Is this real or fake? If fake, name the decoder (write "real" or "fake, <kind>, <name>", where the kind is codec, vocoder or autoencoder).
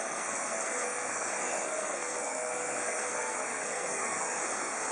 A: fake, codec, SNAC